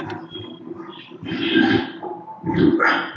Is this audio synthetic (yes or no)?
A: no